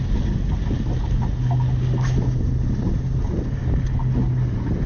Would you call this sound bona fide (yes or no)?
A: yes